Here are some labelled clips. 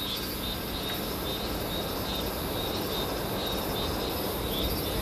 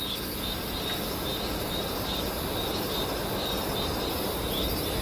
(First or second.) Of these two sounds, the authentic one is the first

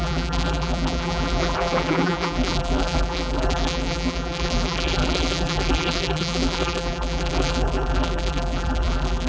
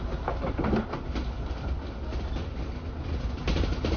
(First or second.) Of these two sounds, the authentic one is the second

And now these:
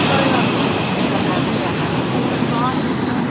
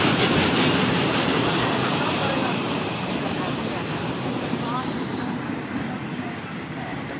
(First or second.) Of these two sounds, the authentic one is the first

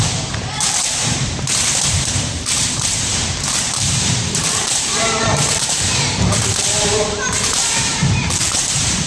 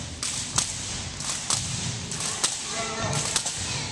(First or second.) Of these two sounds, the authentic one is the second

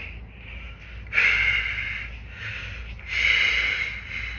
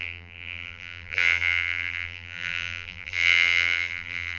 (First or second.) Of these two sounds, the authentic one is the first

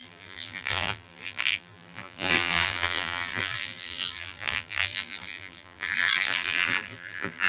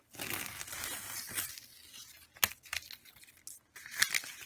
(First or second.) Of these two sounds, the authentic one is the second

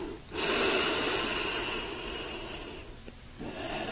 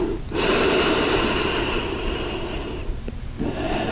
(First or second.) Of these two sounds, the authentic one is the first